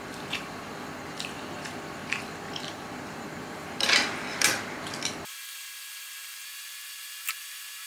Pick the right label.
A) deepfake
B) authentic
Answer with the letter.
A